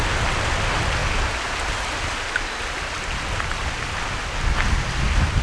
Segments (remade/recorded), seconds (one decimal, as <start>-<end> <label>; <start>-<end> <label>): 0.0-5.4 recorded